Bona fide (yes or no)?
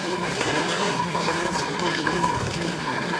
no